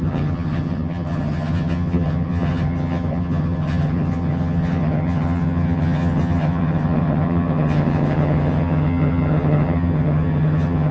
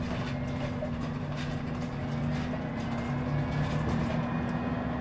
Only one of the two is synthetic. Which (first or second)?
first